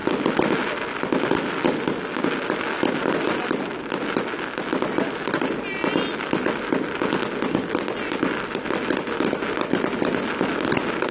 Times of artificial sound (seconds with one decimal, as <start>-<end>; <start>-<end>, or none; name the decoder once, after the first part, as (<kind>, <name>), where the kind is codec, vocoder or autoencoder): none